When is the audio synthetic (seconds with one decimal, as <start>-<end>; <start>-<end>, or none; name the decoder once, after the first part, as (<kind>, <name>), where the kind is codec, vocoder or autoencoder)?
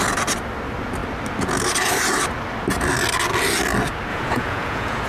4.1-5.1 (vocoder, Vocos)